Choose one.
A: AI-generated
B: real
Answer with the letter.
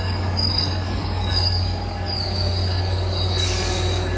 A